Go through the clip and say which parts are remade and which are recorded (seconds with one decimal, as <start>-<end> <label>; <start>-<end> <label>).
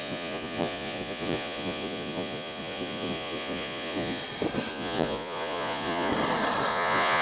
0.0-4.2 remade; 4.2-4.7 recorded; 4.7-6.1 remade; 6.1-6.7 recorded; 6.7-7.2 remade